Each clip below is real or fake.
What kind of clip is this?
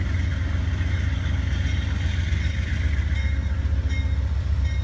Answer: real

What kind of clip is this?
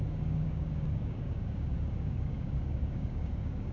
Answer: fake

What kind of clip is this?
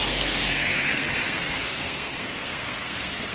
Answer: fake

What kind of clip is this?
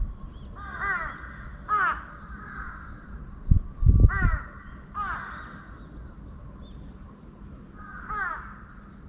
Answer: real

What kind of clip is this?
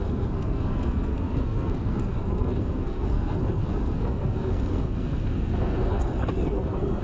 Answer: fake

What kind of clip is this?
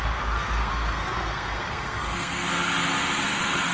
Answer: fake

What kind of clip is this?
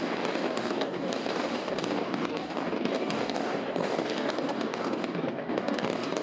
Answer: fake